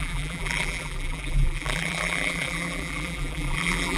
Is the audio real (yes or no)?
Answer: no